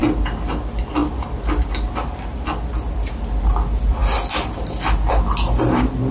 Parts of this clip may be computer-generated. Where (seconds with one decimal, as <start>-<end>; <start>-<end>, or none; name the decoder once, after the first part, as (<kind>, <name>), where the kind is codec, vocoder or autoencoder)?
0.5-1.0 (vocoder, BigVGAN v2); 3.2-4.0; 5.1-6.1